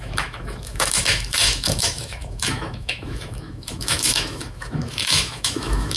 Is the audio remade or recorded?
remade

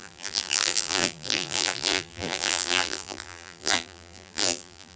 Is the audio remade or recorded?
remade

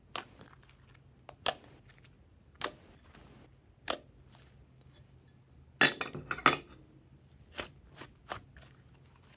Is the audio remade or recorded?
recorded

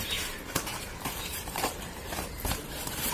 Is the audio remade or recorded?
remade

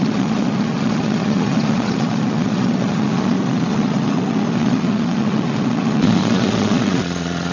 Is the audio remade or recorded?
remade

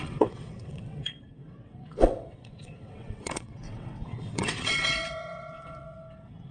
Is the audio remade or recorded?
remade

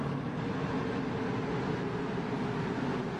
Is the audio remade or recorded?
recorded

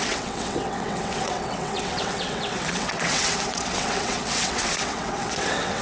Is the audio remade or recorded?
remade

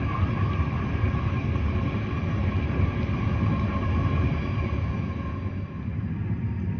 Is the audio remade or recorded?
recorded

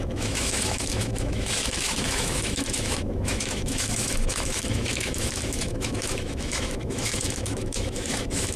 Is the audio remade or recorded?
remade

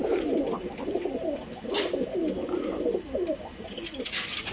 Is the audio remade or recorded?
recorded